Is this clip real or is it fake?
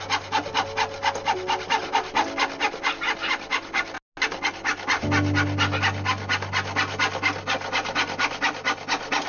real